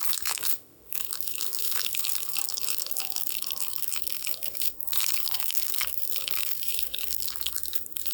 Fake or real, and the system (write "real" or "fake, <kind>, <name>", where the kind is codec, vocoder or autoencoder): fake, autoencoder, DAC-VAE